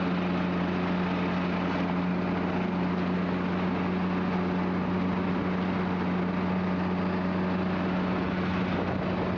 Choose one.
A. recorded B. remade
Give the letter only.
A